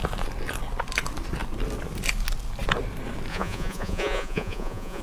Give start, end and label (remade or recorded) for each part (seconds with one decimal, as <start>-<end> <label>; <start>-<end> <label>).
0.0-3.3 recorded; 3.3-5.0 remade